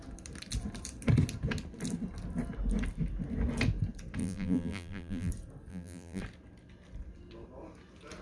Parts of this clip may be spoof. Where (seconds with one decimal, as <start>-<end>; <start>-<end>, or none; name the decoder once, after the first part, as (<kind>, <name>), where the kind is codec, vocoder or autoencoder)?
4.2-5.3 (vocoder, BigVGAN v2); 5.7-6.2